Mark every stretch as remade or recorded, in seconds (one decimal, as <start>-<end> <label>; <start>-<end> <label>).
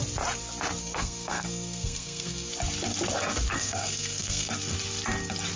0.0-0.8 recorded; 0.8-2.5 remade; 2.5-3.5 recorded; 3.5-4.5 remade; 4.5-5.6 recorded